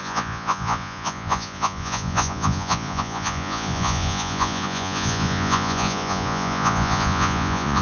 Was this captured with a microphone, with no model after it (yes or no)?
no